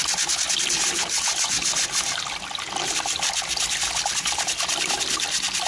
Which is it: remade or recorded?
recorded